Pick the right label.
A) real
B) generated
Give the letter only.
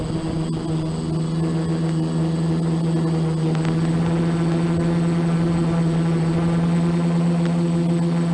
A